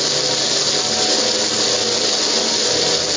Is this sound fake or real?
real